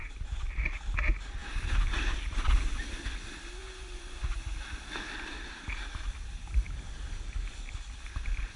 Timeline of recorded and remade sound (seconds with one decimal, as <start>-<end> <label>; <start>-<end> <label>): 0.0-3.6 recorded; 3.6-4.3 remade; 4.3-8.6 recorded